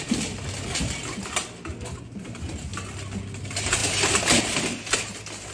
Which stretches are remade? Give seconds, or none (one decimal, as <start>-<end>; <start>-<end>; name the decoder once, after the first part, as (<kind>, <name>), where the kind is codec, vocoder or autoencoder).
3.8-4.4 (vocoder, BigVGAN v2)